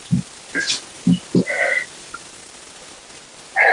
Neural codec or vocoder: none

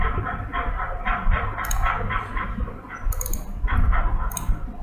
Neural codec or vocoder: vocoder, BigVGAN v2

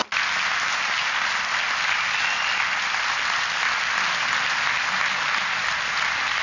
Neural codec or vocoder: none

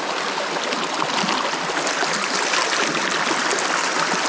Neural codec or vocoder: none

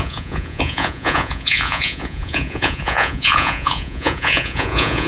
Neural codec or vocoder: vocoder, Vocos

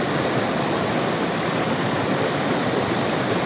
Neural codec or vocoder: vocoder, BigVGAN v2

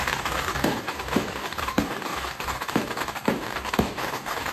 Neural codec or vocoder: codec, DAC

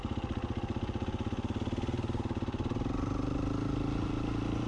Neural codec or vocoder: none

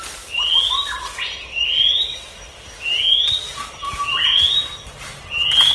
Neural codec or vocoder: none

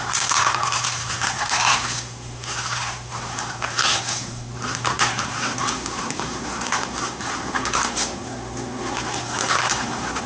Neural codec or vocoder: codec, SNAC